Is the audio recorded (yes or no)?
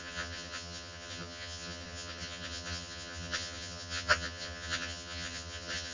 no